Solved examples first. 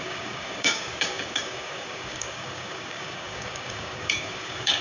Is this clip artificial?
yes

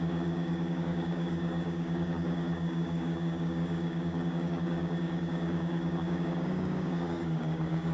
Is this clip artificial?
yes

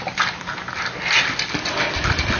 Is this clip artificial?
no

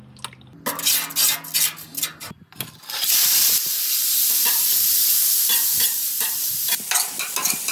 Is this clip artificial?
no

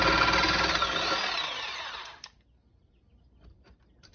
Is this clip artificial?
no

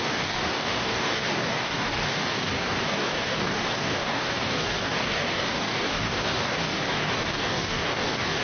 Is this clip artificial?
yes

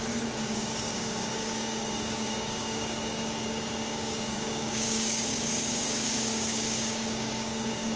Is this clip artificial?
yes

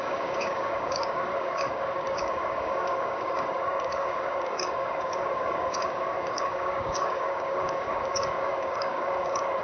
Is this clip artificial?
yes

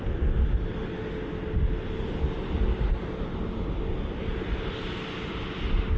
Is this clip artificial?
no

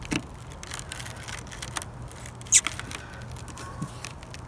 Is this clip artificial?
no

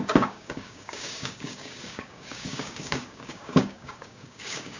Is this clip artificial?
yes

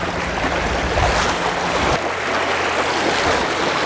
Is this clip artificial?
no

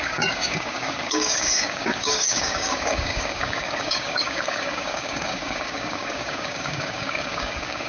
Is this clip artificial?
yes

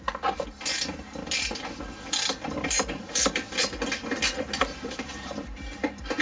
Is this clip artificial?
no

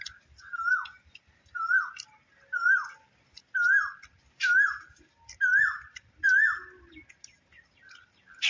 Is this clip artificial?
no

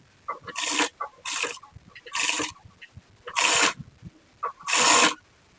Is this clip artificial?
no